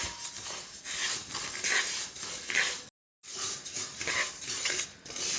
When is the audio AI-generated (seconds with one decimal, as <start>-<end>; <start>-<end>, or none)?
none